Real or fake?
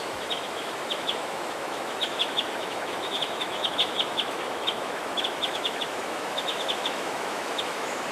fake